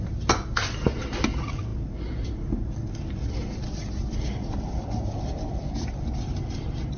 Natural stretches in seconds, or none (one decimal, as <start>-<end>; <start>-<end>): 0.0-7.0